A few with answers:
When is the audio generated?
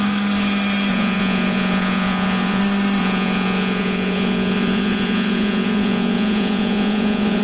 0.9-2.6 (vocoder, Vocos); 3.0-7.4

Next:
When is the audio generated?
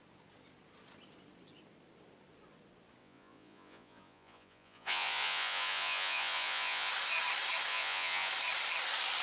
3.0-6.9 (vocoder, Vocos); 7.7-8.3